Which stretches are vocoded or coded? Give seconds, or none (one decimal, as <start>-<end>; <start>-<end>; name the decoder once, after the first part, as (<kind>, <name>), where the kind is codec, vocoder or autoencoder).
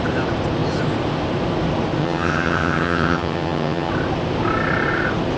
2.0-3.9 (vocoder, HiFi-GAN)